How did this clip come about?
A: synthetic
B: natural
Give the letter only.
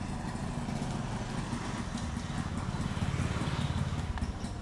B